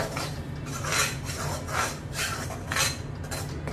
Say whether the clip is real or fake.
real